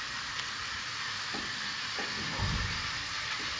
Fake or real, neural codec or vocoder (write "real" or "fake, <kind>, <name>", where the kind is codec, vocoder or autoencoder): real